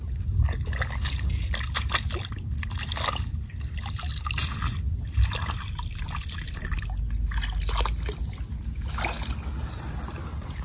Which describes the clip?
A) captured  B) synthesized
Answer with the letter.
A